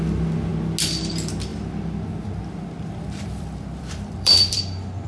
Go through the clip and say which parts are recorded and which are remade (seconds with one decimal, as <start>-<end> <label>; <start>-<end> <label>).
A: 0.0-1.5 recorded; 1.5-4.6 remade; 4.6-5.1 recorded